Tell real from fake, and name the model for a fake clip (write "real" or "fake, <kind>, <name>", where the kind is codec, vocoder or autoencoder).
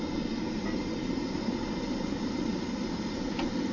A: real